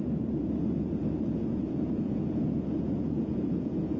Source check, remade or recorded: remade